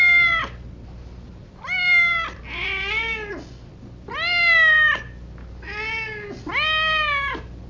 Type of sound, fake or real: real